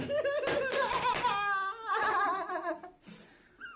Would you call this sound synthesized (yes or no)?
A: no